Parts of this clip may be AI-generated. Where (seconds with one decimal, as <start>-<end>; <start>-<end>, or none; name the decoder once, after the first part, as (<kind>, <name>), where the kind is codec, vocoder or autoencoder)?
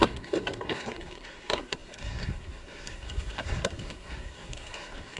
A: 0.0-5.2 (codec, SNAC)